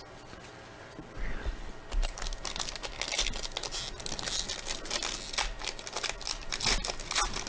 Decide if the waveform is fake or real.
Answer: real